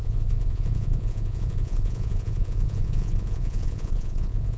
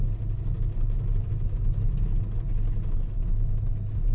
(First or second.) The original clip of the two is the second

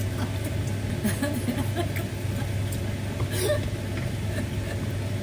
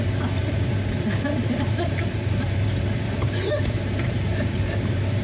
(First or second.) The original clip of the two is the first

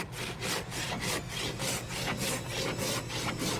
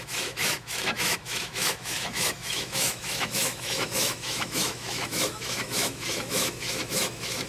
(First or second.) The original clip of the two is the first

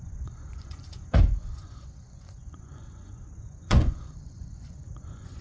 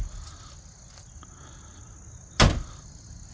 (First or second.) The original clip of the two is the second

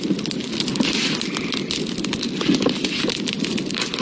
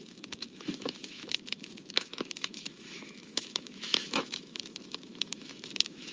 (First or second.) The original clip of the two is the first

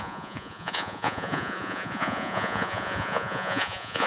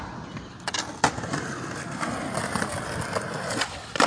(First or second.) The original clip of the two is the second